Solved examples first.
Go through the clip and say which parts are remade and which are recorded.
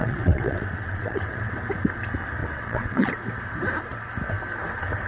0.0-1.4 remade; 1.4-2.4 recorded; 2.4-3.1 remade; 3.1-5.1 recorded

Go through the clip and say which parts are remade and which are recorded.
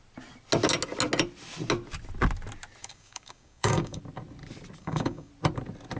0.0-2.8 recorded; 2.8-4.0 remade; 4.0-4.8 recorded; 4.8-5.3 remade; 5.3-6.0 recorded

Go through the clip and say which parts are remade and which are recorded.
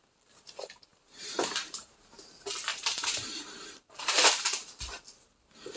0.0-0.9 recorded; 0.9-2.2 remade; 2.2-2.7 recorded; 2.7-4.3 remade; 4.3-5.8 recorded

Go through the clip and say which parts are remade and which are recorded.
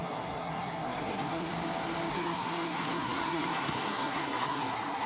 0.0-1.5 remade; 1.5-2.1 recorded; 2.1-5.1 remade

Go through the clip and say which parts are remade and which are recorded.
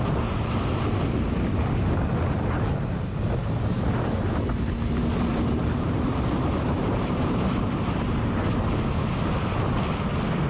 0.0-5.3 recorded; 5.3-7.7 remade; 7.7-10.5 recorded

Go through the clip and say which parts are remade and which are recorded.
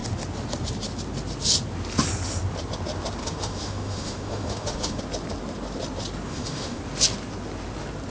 0.0-3.2 recorded; 3.2-5.0 remade; 5.0-6.3 recorded; 6.3-6.8 remade; 6.8-8.1 recorded